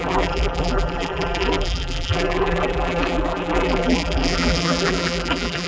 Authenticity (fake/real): fake